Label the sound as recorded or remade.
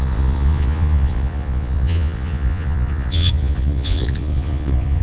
remade